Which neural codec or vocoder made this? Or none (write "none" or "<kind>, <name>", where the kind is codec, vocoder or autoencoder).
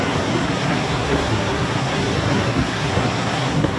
codec, SNAC